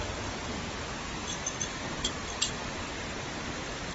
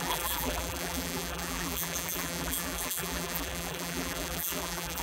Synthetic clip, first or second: second